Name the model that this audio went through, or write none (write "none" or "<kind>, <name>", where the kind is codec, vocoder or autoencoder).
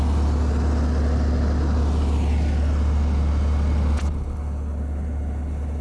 none